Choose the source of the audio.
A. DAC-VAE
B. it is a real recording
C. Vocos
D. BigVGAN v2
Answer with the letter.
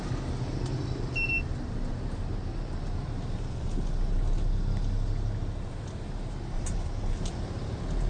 B